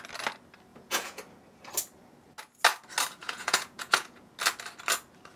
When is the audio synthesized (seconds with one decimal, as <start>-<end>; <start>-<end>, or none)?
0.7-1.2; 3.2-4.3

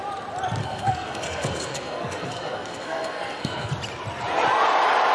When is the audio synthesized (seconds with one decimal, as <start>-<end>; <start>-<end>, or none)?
0.6-3.7

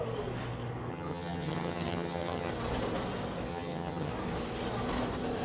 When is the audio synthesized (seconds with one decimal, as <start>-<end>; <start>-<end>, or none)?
0.9-2.5; 3.5-4.1

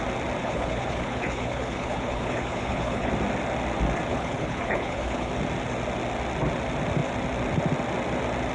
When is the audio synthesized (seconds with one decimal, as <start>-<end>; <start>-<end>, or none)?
0.4-3.1; 4.1-5.3

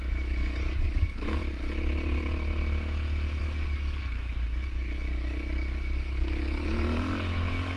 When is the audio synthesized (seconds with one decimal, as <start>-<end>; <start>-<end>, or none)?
0.0-1.4; 3.4-7.8

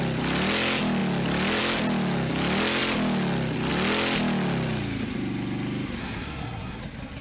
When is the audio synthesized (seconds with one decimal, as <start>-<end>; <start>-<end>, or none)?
6.0-6.8